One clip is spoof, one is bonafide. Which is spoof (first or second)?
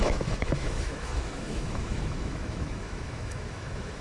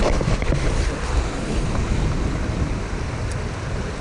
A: first